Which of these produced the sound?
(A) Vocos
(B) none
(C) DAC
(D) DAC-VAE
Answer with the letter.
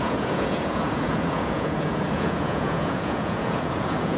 A